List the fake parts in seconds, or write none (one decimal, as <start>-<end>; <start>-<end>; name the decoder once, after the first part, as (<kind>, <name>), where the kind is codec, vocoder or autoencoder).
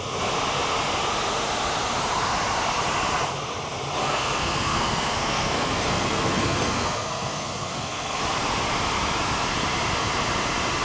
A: 4.0-8.2 (codec, SNAC)